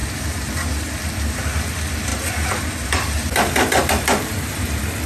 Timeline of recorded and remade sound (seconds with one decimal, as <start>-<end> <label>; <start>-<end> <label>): 0.0-1.3 recorded; 1.3-2.1 remade; 2.1-5.1 recorded